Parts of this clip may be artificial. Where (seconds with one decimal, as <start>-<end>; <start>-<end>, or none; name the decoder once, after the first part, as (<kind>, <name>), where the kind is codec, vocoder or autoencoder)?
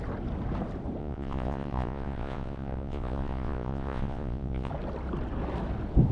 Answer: 1.0-4.7 (vocoder, Vocos)